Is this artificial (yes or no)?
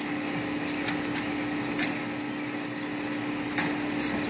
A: no